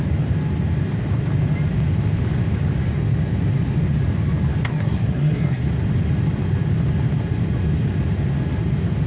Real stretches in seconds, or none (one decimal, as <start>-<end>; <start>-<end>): 0.0-4.7; 5.7-9.1